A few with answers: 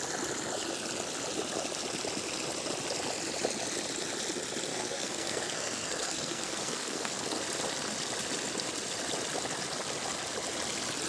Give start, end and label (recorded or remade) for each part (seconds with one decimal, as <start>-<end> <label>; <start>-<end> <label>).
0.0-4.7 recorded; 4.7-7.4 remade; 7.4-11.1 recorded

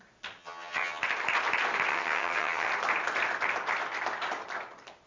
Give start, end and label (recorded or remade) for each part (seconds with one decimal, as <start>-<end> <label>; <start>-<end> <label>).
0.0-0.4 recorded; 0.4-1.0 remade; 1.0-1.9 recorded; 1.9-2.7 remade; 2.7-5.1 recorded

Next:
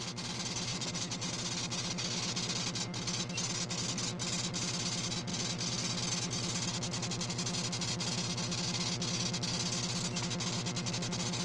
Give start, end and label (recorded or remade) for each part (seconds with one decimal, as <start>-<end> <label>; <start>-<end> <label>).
0.0-0.7 recorded; 0.7-1.3 remade; 1.3-11.4 recorded

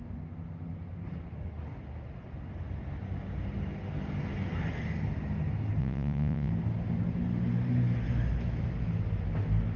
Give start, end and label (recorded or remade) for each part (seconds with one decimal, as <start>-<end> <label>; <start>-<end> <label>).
0.0-5.8 recorded; 5.8-6.5 remade; 6.5-9.8 recorded

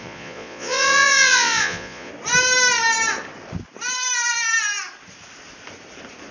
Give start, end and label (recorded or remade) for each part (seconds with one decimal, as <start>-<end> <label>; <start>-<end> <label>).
0.0-2.1 remade; 2.1-6.3 recorded